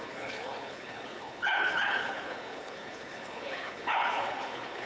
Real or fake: fake